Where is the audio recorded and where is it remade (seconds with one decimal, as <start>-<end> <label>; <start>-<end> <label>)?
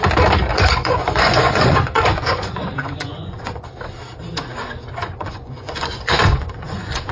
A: 0.0-0.5 recorded; 0.5-3.7 remade; 3.7-5.0 recorded; 5.0-7.1 remade